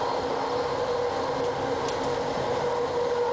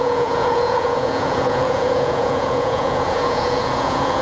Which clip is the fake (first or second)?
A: second